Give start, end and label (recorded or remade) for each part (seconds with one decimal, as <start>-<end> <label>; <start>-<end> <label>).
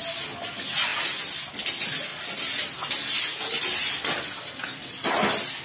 0.0-5.6 recorded